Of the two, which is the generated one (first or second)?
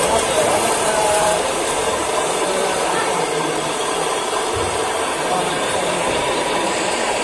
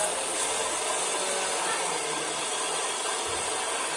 first